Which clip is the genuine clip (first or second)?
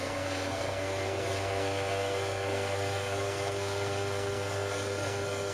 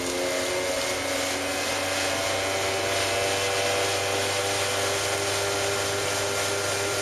second